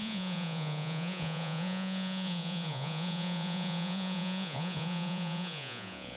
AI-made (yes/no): yes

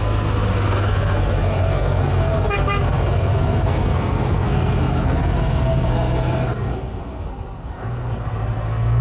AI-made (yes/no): yes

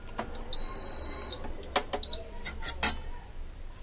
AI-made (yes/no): no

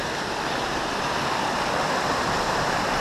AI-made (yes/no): yes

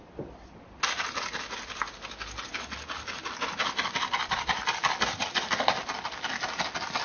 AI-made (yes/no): no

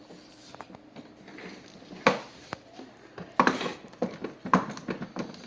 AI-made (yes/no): no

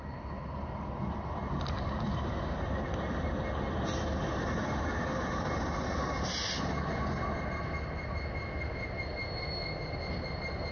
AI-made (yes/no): no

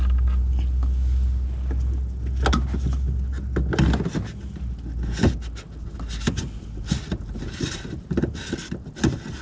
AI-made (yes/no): no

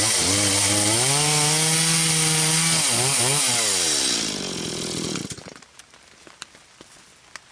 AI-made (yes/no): no